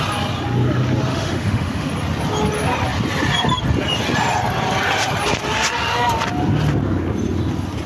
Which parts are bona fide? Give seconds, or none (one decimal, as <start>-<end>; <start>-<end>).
0.0-1.1; 1.9-7.9